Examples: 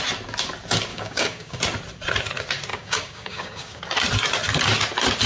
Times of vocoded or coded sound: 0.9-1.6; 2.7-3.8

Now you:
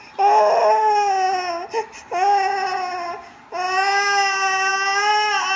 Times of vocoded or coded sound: none

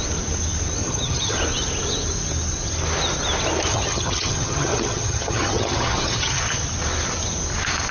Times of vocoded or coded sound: 0.8-1.4; 3.7-6.4

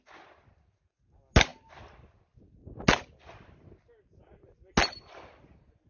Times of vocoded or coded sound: none

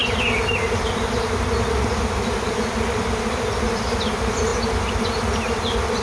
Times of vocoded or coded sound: 4.5-5.6

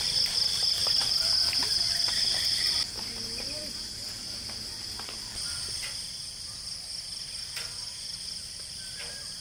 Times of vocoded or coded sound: none

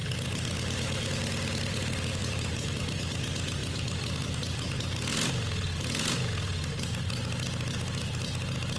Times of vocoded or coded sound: 2.2-3.0

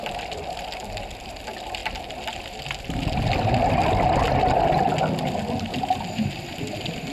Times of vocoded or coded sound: none